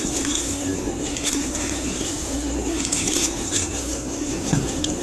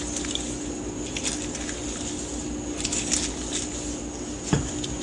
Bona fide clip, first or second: second